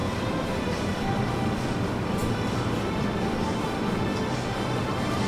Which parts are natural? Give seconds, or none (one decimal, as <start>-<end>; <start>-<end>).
2.2-4.8